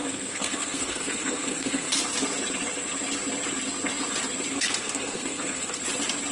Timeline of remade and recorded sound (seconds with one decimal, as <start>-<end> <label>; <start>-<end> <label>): 0.0-1.9 remade; 1.9-4.5 recorded; 4.5-5.8 remade; 5.8-6.3 recorded